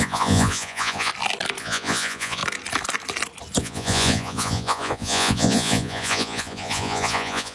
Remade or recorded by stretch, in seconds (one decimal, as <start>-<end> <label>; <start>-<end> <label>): 0.0-1.1 remade; 1.1-1.6 recorded; 1.6-2.4 remade; 2.4-3.6 recorded; 3.6-7.5 remade